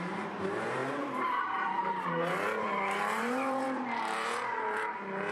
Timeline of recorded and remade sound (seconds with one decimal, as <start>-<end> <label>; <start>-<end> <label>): 0.0-5.3 remade